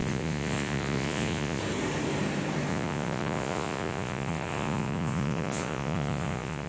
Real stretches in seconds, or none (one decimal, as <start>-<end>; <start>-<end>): 1.6-2.7